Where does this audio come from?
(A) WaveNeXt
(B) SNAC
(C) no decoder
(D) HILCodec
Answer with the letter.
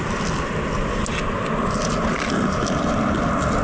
C